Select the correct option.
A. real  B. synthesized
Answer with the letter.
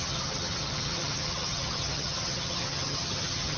B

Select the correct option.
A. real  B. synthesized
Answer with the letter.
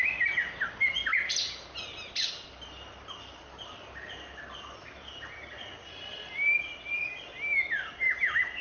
A